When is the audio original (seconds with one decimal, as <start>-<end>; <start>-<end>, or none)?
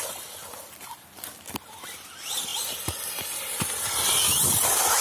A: 0.0-5.0